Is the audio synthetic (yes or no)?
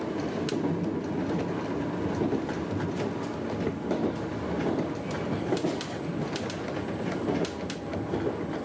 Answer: no